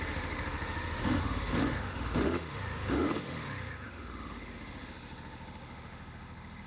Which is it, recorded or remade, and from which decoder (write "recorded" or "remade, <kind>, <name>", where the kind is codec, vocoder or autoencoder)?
remade, autoencoder, DAC-VAE